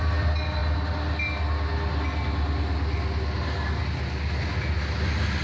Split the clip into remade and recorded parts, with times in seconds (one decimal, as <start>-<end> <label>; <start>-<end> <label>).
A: 0.0-5.4 recorded